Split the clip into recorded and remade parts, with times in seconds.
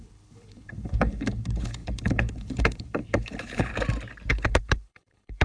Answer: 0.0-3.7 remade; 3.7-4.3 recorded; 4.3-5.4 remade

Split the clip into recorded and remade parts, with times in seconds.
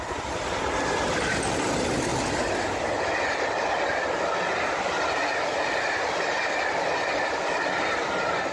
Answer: 0.0-8.5 recorded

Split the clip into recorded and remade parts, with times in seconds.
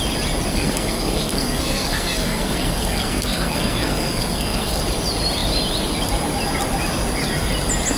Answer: 0.0-0.5 recorded; 0.5-4.8 remade; 4.8-8.0 recorded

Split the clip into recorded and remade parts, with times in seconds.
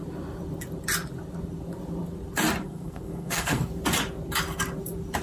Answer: 0.0-2.6 recorded; 2.6-3.7 remade; 3.7-5.2 recorded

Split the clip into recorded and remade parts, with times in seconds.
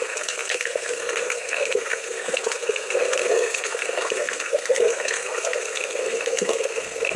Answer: 0.0-7.2 remade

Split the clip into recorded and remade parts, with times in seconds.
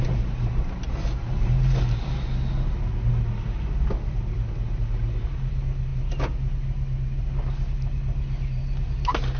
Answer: 0.0-9.4 recorded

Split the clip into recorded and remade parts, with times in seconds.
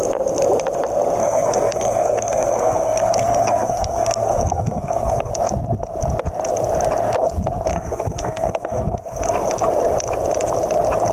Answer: 0.0-1.2 recorded; 1.2-5.3 remade; 5.3-7.7 recorded; 7.7-9.2 remade; 9.2-11.1 recorded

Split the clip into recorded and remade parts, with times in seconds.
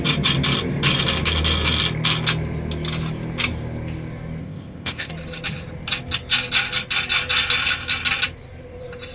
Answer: 0.0-4.4 recorded; 4.4-5.1 remade; 5.1-9.1 recorded